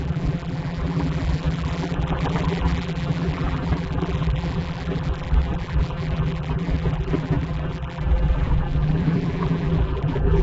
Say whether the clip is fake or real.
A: fake